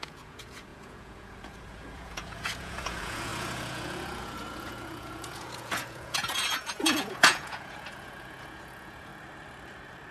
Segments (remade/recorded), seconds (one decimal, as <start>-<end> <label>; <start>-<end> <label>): 0.0-9.1 remade; 9.1-10.1 recorded